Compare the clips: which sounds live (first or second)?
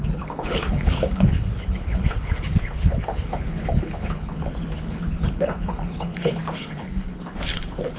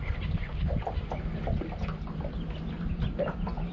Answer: second